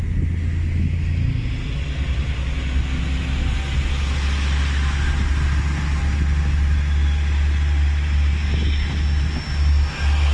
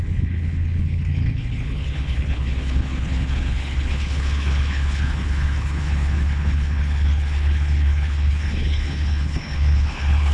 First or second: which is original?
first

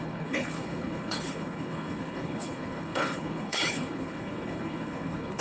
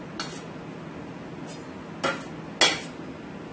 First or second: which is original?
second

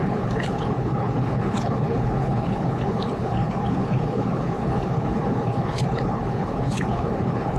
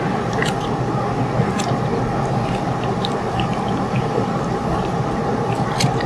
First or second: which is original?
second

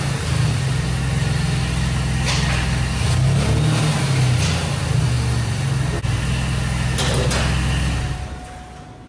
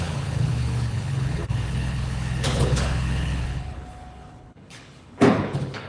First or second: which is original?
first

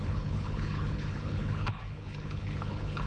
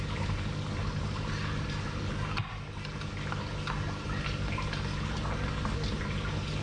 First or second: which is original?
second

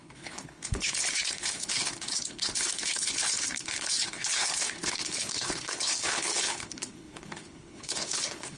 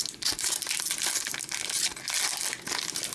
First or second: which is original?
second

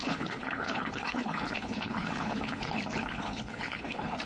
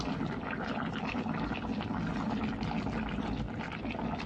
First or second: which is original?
second